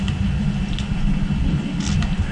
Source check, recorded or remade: recorded